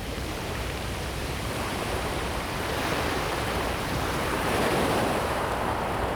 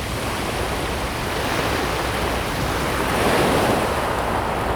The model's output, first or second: first